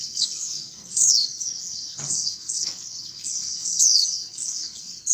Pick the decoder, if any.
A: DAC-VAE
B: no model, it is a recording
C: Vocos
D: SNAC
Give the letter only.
D